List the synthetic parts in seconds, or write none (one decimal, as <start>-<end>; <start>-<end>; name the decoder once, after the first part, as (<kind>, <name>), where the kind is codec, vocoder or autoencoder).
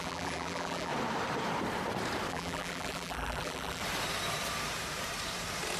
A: 0.0-0.9 (vocoder, BigVGAN v2); 2.3-3.8